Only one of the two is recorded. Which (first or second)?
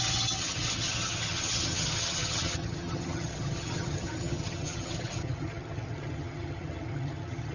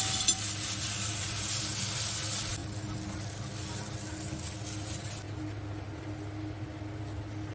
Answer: second